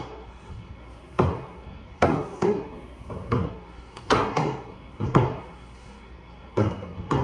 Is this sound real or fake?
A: fake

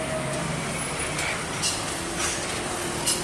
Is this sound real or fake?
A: real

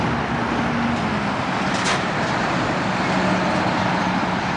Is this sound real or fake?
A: real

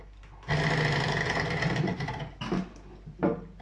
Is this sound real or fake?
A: real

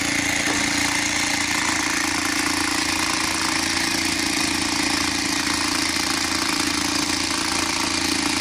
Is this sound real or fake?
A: real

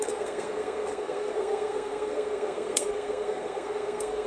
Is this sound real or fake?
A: fake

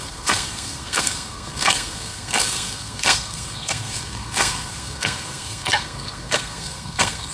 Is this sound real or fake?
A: fake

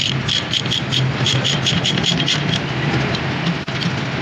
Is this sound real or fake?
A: real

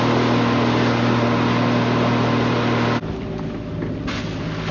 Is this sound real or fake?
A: real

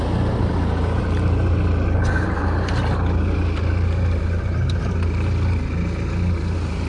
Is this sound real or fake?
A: real